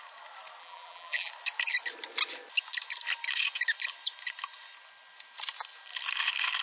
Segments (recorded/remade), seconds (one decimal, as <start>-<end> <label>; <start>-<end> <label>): 0.0-0.6 recorded; 0.6-1.3 remade; 1.3-6.6 recorded